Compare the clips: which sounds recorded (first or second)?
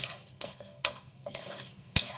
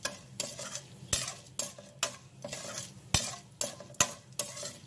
second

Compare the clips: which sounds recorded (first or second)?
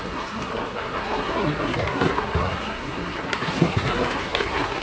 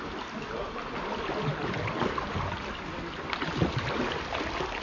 second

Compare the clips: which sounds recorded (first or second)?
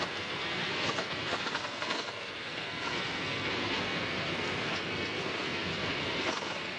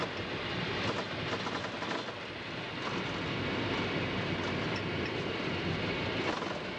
second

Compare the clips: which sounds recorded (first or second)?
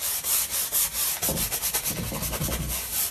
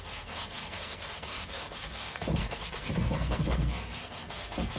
first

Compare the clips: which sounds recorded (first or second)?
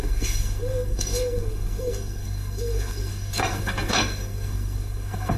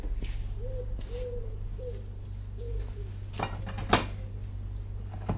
second